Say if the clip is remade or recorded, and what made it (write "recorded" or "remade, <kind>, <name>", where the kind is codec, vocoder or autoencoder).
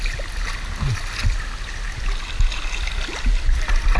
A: recorded